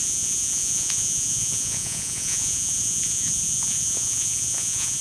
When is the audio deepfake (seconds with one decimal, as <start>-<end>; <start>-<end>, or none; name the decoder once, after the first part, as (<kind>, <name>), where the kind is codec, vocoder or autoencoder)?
0.0-5.0 (vocoder, Vocos)